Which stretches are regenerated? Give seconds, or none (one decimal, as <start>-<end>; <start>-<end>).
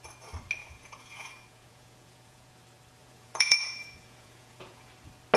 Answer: 0.6-2.5; 3.0-4.9